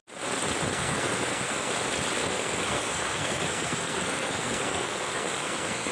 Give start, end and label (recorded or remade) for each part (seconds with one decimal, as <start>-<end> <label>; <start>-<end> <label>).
0.0-0.7 recorded; 0.7-1.7 remade; 1.7-2.2 recorded; 2.2-5.9 remade